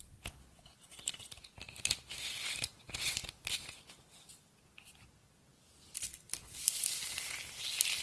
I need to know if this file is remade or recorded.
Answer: recorded